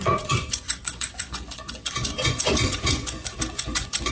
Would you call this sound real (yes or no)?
no